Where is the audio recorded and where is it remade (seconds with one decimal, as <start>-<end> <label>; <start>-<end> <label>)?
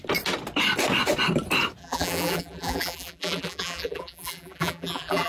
0.0-1.8 recorded; 1.8-5.3 remade